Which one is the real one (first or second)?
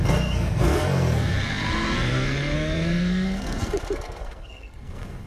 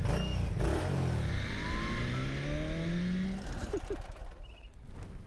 second